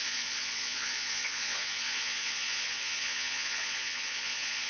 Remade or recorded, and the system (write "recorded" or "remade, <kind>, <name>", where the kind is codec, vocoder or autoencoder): remade, vocoder, Vocos